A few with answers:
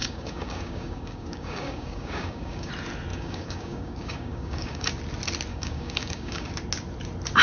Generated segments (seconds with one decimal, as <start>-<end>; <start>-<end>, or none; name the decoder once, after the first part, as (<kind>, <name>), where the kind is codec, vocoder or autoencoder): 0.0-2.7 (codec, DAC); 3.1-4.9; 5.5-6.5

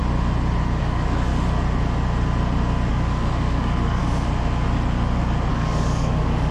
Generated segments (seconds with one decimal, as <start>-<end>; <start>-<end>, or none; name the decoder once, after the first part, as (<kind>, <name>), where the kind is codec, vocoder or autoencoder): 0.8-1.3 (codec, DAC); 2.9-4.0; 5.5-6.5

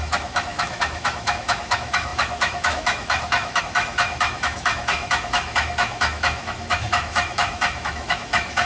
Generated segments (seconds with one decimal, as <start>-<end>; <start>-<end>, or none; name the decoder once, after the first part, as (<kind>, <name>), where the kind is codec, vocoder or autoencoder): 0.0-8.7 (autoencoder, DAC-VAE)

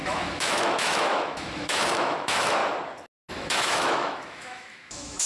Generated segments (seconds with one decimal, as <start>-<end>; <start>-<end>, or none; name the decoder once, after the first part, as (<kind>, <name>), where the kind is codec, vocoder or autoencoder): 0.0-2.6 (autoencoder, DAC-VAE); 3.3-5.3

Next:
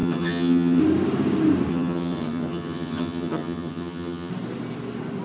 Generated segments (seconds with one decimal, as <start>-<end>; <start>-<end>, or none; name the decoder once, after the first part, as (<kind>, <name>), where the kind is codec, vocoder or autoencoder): 0.0-0.8 (vocoder, HiFi-GAN); 1.7-4.3

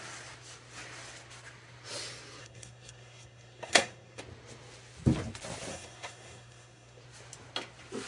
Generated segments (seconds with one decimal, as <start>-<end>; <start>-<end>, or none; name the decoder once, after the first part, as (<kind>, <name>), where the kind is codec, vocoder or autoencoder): 2.4-4.2 (codec, SNAC); 5.7-7.0